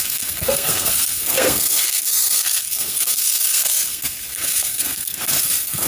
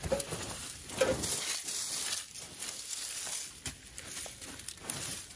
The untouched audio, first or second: second